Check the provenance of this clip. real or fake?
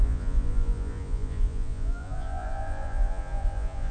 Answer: fake